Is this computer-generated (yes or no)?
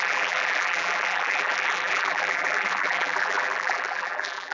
yes